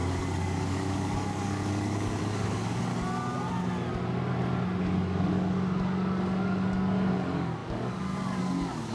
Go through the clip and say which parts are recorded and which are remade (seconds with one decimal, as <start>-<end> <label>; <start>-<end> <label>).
0.0-2.9 remade; 2.9-4.8 recorded; 4.8-8.9 remade